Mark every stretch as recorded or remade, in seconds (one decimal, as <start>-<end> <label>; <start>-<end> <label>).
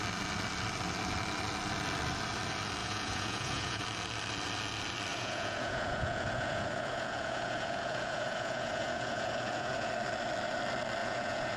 0.0-2.8 recorded; 2.8-3.8 remade; 3.8-5.1 recorded; 5.1-9.9 remade; 9.9-11.0 recorded; 11.0-11.6 remade